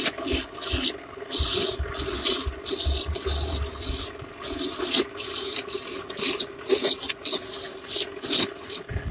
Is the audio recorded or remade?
recorded